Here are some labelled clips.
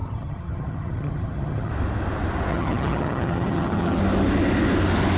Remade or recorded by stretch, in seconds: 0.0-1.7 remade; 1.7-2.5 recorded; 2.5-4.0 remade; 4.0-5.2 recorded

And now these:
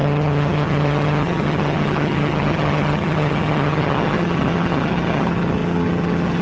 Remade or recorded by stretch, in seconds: 0.0-6.4 remade